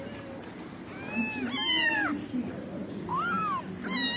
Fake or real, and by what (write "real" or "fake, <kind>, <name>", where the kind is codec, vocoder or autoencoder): real